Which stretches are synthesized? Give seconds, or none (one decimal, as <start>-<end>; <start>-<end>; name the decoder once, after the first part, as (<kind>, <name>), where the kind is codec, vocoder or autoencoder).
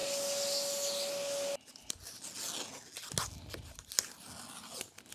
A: none